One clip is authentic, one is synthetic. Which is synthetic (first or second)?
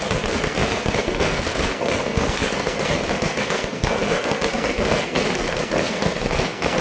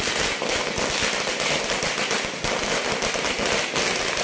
first